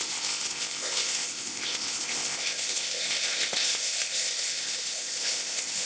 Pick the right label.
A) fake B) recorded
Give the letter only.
A